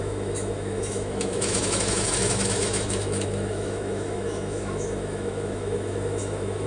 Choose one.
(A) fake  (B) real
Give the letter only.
A